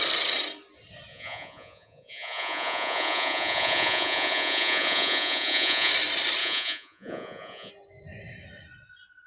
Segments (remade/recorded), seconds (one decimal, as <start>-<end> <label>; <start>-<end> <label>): 0.0-1.1 recorded; 1.1-5.9 remade; 5.9-6.4 recorded; 6.4-7.7 remade; 7.7-9.3 recorded